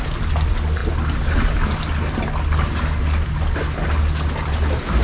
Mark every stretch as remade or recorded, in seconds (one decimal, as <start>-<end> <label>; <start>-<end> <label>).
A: 0.0-5.0 recorded